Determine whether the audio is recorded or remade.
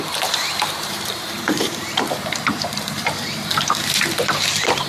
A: remade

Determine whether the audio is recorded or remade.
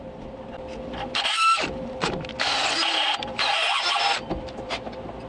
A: recorded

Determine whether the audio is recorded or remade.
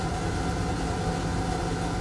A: recorded